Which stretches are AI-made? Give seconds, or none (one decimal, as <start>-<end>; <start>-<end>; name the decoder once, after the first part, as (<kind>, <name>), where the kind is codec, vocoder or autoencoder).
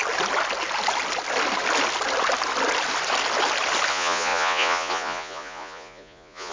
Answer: 3.9-6.5 (vocoder, Vocos)